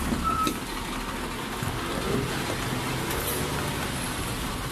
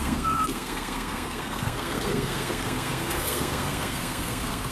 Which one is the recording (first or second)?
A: first